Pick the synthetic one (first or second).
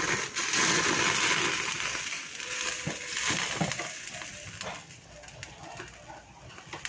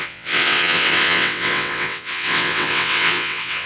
second